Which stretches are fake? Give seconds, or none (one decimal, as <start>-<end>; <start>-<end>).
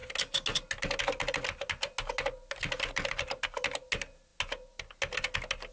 none